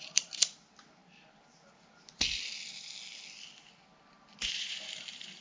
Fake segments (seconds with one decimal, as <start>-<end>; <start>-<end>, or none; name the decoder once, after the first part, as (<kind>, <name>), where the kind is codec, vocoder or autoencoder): 0.0-1.0 (vocoder, BigVGAN v2); 4.2-5.4